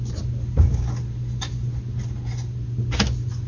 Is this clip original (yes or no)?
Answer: yes